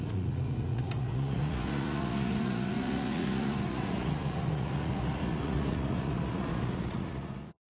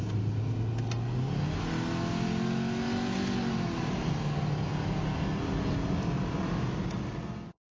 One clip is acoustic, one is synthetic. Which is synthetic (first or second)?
first